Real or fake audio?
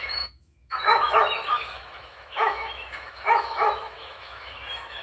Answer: fake